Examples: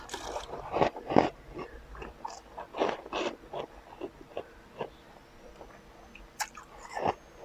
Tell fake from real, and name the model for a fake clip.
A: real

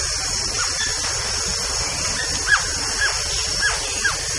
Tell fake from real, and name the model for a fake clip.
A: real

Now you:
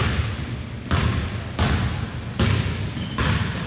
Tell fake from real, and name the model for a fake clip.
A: real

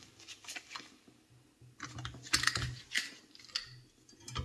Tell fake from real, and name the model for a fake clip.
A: real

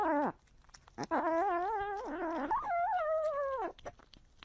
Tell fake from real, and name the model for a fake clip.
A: real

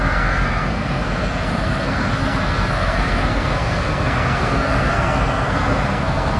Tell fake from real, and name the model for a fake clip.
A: fake, codec, SNAC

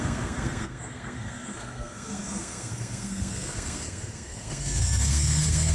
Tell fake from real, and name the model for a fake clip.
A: fake, codec, SNAC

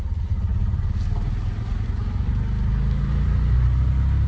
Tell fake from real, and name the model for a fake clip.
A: real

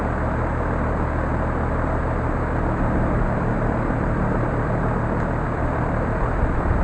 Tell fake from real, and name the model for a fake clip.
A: real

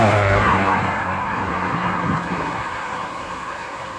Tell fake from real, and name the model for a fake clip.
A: fake, codec, SNAC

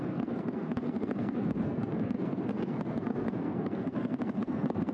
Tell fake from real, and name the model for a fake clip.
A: fake, codec, SNAC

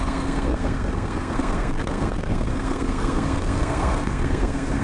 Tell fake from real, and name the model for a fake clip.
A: fake, codec, SNAC